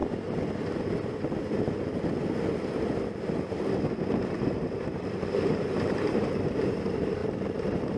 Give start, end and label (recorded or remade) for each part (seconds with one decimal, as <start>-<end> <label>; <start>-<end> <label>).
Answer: 0.0-4.2 recorded; 4.2-7.2 remade; 7.2-8.0 recorded